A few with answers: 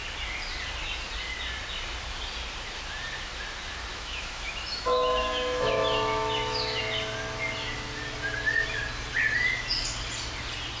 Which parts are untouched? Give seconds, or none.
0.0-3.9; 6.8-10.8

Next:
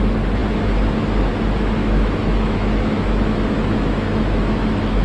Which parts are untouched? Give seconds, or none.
0.0-1.8